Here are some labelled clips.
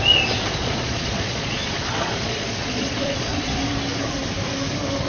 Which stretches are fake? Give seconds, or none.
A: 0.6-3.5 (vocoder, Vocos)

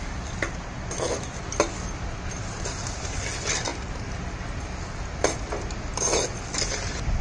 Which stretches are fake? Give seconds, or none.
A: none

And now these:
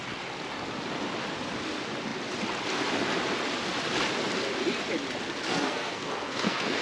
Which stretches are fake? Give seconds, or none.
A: 5.5-6.8 (codec, SNAC)

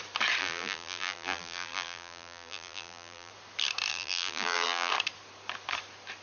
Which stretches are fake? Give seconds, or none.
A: 0.4-3.3 (vocoder, BigVGAN v2); 3.9-4.9